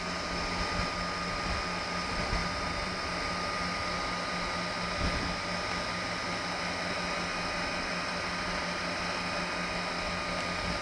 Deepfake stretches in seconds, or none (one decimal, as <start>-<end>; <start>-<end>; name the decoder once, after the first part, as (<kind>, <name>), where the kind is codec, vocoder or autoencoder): 2.4-3.3 (vocoder, BigVGAN v2)